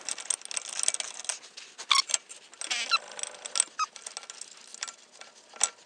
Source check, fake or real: real